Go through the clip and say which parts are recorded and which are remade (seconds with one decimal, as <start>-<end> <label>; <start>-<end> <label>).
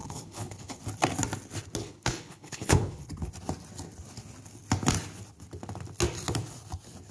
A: 0.0-0.8 remade; 0.8-1.8 recorded; 1.8-3.1 remade; 3.1-7.1 recorded